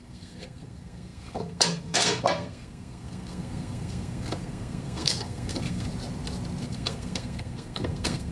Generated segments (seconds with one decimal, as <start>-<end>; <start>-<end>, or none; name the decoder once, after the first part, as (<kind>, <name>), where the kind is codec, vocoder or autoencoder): 0.0-5.9 (codec, SNAC); 6.6-8.3